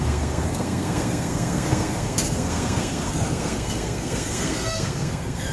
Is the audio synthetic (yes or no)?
yes